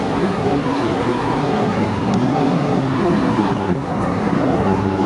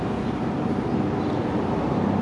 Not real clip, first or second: first